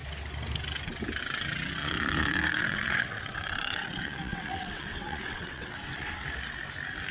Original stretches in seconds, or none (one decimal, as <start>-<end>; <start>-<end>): 0.0-1.8; 6.1-7.1